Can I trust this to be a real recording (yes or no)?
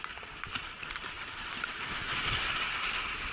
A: yes